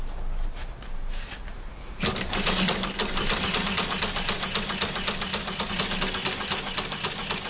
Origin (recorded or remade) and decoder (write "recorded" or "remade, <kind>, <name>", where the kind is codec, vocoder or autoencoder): recorded